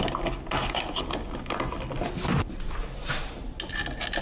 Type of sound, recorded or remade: recorded